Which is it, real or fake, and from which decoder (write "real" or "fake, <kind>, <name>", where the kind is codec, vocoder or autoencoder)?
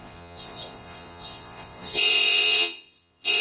fake, vocoder, Vocos